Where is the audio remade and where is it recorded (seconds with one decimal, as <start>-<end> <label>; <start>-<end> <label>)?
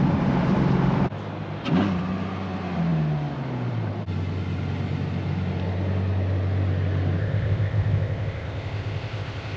0.0-7.2 recorded; 7.2-9.6 remade